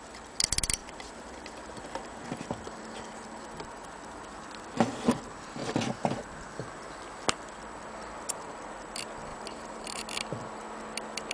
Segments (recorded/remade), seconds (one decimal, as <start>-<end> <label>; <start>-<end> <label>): 0.0-0.8 recorded; 0.8-1.5 remade; 1.5-5.6 recorded; 5.6-6.2 remade; 6.2-9.3 recorded; 9.3-10.0 remade; 10.0-11.3 recorded